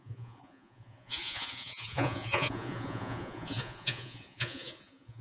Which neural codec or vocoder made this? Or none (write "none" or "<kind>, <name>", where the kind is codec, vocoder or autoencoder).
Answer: vocoder, Vocos